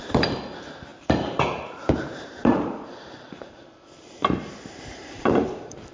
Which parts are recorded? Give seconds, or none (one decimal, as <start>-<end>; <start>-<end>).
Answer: none